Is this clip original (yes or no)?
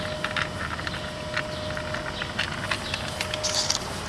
yes